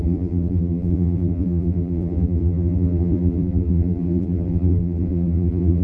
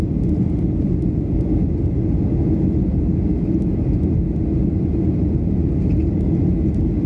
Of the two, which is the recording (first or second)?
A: second